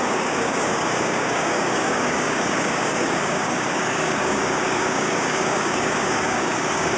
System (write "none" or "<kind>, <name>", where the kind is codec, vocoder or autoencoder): codec, DAC